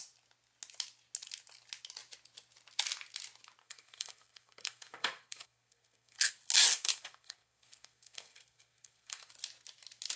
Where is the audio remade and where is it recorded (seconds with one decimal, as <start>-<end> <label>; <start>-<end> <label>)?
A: 0.0-3.6 recorded; 3.6-6.3 remade; 6.3-6.7 recorded; 6.7-9.3 remade; 9.3-10.2 recorded